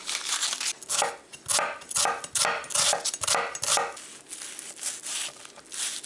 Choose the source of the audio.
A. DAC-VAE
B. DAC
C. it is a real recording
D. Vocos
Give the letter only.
C